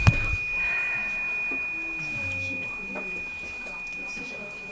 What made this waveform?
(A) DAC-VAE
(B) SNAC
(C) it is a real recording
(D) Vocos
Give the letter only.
C